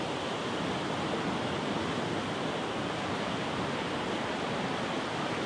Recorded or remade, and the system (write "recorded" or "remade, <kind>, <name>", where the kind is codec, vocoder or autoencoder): recorded